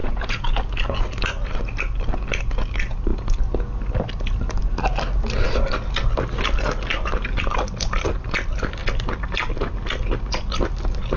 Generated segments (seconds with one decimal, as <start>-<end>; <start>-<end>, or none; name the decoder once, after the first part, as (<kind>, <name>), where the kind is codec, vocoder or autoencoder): 0.0-0.6 (vocoder, Vocos)